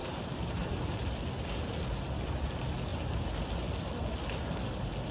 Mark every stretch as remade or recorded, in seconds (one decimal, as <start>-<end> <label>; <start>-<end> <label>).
0.0-1.0 remade; 1.0-5.1 recorded